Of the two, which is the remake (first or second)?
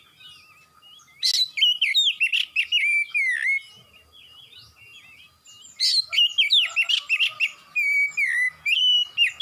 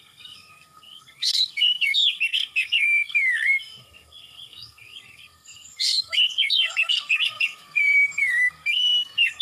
second